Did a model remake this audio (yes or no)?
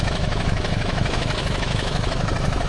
yes